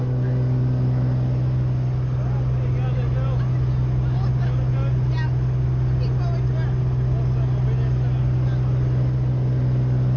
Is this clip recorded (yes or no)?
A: yes